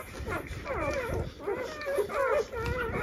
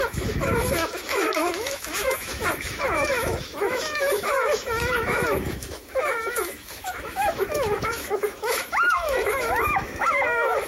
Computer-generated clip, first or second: second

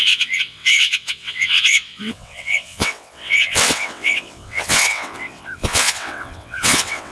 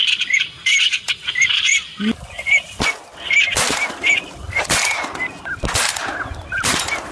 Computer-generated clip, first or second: first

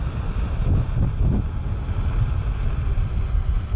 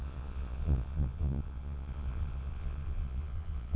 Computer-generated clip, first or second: second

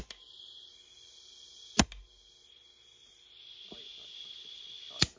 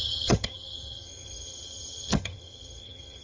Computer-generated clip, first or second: second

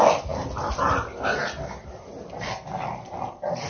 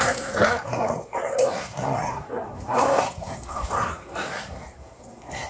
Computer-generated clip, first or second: second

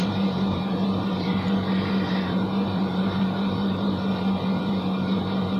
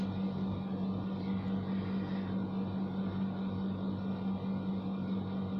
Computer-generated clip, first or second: first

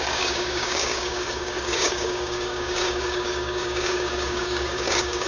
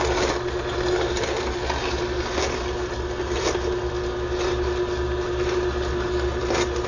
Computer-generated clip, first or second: first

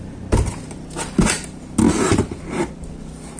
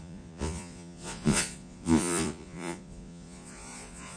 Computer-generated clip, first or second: second